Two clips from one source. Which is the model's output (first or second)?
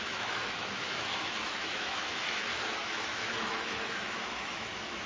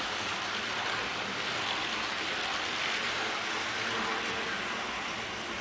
first